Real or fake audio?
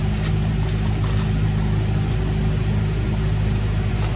real